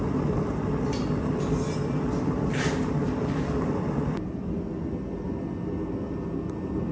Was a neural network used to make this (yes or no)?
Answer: no